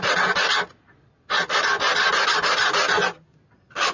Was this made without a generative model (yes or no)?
yes